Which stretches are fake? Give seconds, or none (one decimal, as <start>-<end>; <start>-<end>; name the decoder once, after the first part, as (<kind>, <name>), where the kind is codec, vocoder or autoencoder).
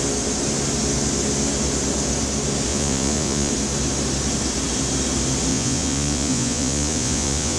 2.7-3.5 (vocoder, Vocos); 5.5-7.6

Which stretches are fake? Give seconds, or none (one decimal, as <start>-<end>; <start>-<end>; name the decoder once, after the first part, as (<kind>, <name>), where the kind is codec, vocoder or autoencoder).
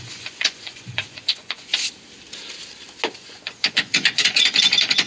0.0-1.7 (vocoder, Vocos); 3.1-5.1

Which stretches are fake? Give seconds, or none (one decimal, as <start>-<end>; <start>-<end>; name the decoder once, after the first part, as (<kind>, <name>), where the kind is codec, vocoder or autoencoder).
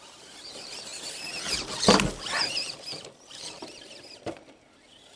none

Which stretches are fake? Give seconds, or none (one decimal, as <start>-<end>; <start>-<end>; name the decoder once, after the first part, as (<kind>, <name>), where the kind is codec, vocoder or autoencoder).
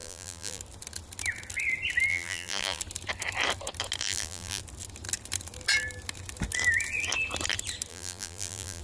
0.0-0.6 (vocoder, BigVGAN v2); 2.1-2.8; 4.0-4.6; 7.9-8.8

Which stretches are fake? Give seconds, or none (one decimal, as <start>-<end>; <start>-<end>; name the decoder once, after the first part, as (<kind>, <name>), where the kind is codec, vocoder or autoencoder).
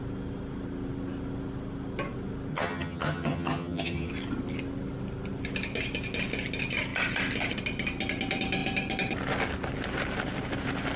2.5-4.1 (vocoder, HiFi-GAN)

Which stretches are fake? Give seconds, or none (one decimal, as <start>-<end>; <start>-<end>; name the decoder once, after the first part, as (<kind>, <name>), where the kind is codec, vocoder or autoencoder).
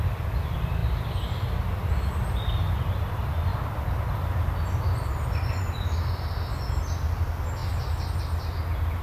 none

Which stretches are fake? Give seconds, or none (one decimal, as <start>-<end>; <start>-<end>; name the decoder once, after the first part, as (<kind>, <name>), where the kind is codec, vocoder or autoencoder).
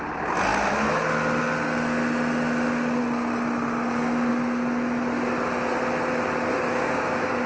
6.5-7.5 (codec, DAC)